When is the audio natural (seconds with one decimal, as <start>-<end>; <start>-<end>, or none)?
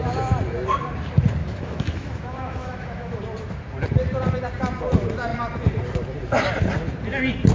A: 0.0-1.4; 3.2-7.5